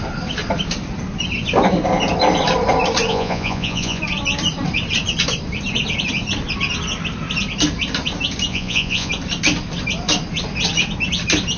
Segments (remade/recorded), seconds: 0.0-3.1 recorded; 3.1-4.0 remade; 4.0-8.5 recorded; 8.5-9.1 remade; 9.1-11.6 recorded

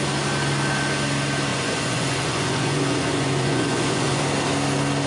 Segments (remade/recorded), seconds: 0.0-1.5 recorded; 1.5-4.2 remade; 4.2-5.1 recorded

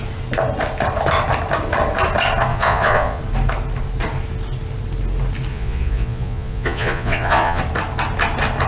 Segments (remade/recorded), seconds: 0.0-2.5 recorded; 2.5-3.2 remade; 3.2-5.5 recorded; 5.5-7.6 remade; 7.6-8.7 recorded

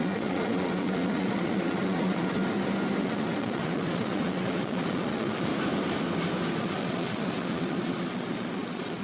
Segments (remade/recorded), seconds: 0.0-2.4 remade; 2.4-3.0 recorded; 3.0-5.5 remade; 5.5-6.6 recorded; 6.6-9.0 remade

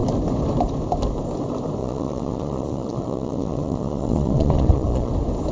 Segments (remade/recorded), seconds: 0.0-1.8 recorded; 1.8-5.1 remade; 5.1-5.5 recorded

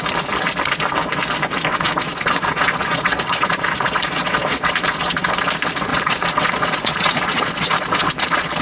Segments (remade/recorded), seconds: 0.0-1.7 recorded; 1.7-5.5 remade; 5.5-5.9 recorded; 5.9-8.6 remade